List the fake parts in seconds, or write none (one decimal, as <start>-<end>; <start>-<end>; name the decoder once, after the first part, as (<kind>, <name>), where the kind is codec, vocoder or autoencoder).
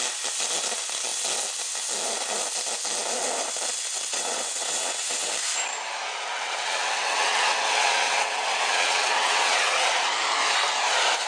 4.1-5.3 (vocoder, WaveNeXt); 6.3-9.9